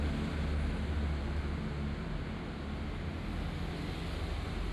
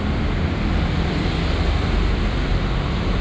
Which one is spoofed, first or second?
second